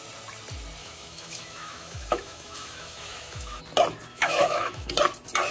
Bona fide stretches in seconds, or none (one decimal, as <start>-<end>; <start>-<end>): 0.0-0.8; 3.6-4.1; 4.9-5.5